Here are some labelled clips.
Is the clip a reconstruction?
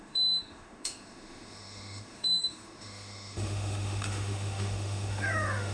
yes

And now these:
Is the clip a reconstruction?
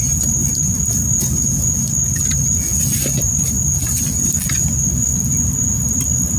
no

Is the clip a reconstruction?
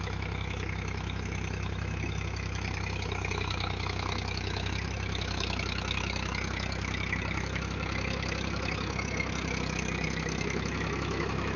yes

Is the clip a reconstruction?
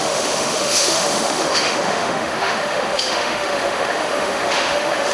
yes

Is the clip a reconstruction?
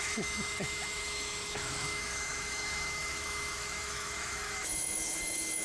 yes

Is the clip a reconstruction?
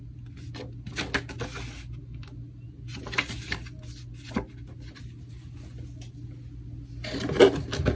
no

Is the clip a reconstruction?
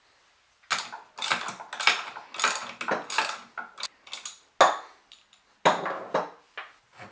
no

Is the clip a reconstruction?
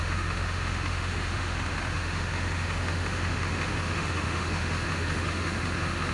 yes